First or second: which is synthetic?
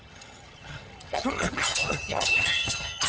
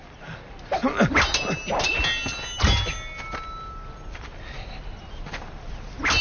first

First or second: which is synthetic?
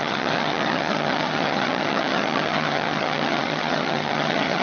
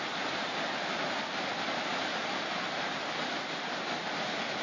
first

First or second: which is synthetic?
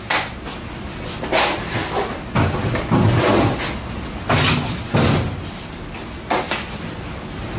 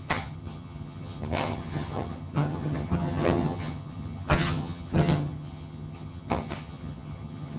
second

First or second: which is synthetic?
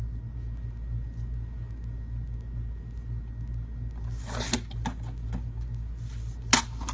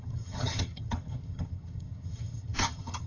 second